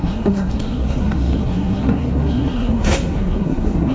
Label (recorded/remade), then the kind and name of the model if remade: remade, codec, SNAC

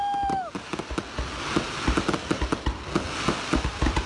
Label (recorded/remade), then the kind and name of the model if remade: recorded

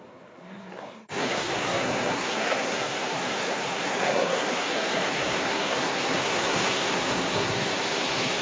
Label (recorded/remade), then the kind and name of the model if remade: remade, codec, SNAC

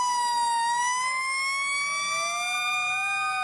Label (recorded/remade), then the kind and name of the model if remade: recorded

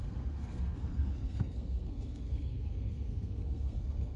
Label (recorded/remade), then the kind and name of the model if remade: remade, codec, SNAC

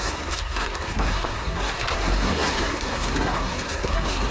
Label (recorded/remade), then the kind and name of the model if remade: remade, codec, SNAC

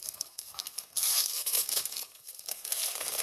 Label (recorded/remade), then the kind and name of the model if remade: remade, codec, SNAC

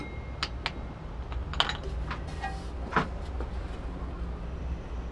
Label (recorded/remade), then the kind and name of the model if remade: recorded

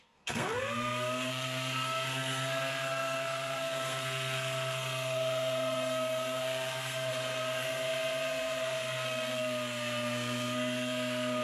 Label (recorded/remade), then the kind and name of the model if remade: remade, codec, SNAC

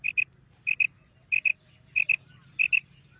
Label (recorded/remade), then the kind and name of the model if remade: recorded